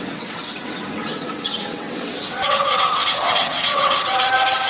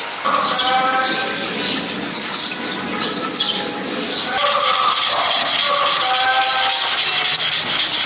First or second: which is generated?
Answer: first